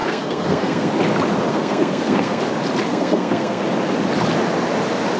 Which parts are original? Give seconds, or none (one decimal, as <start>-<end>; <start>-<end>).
0.9-1.5; 2.4-2.9; 3.6-5.2